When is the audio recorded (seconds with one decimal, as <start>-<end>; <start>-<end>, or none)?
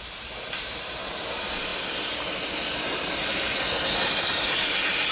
0.0-5.1